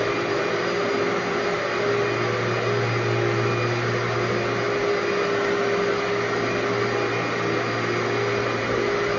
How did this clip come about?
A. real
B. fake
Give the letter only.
A